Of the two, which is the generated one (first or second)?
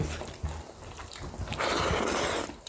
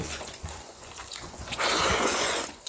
second